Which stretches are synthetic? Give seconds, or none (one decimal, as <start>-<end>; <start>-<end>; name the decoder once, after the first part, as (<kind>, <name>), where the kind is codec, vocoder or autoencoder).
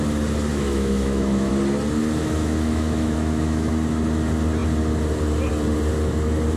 0.5-1.5 (autoencoder, DAC-VAE); 2.2-3.7